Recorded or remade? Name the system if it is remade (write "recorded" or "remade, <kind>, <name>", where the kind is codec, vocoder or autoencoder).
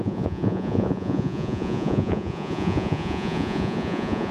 remade, vocoder, Vocos